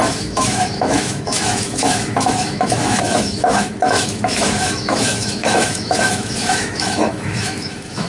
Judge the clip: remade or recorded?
remade